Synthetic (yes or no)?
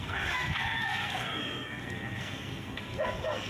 yes